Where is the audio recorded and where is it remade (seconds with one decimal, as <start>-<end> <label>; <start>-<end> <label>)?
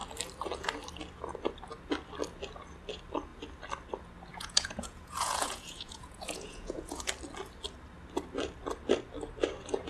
0.0-4.3 recorded; 4.3-7.1 remade; 7.1-9.9 recorded